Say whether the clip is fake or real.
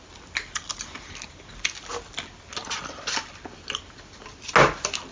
real